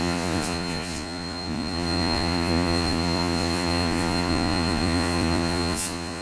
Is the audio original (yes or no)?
no